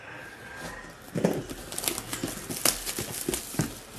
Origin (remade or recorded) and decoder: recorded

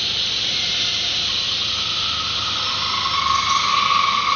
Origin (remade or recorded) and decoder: recorded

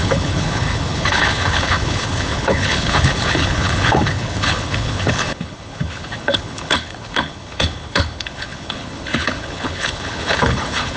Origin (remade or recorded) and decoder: remade, codec, HILCodec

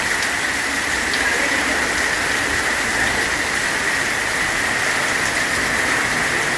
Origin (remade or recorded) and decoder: recorded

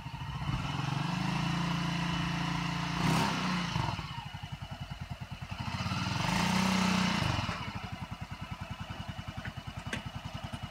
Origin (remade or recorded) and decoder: recorded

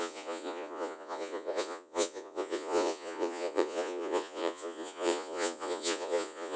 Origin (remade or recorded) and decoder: remade, vocoder, Vocos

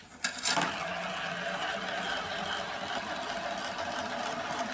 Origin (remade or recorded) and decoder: recorded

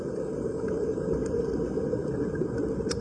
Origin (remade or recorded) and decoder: recorded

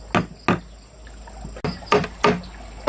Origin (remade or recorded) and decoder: recorded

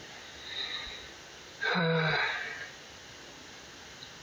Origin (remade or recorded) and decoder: recorded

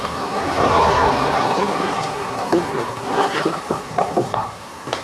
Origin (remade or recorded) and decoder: remade, codec, SNAC